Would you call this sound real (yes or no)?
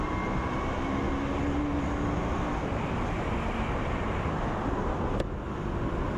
yes